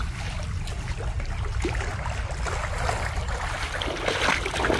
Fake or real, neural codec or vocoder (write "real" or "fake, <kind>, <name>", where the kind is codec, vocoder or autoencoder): real